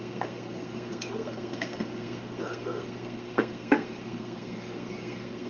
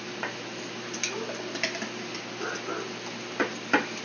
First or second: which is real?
second